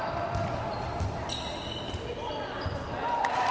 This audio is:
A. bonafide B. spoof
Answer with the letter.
A